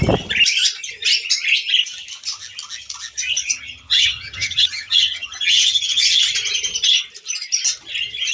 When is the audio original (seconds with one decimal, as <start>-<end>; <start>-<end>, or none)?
0.0-3.4; 6.0-8.3